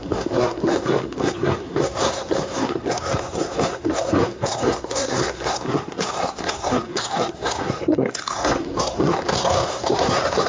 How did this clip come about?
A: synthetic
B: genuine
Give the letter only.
A